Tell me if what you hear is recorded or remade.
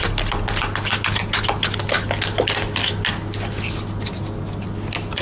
recorded